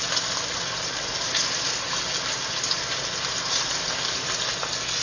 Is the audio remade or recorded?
recorded